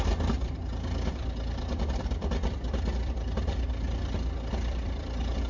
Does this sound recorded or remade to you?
remade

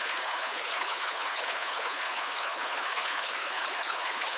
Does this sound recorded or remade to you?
remade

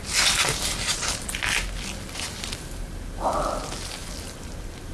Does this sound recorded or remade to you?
recorded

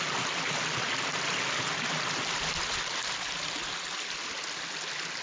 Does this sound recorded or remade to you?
recorded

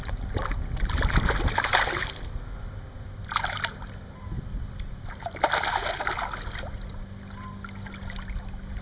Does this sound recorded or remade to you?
recorded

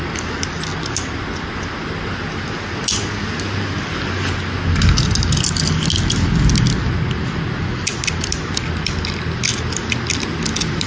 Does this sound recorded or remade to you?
recorded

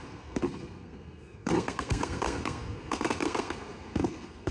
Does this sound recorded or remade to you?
remade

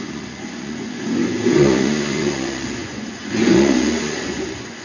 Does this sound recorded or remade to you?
remade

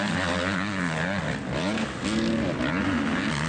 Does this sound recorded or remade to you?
recorded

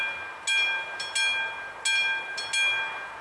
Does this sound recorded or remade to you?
recorded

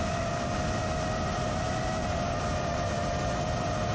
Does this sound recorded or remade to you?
recorded